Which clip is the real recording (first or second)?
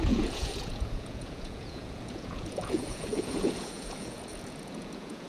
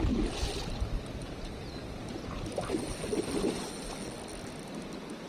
second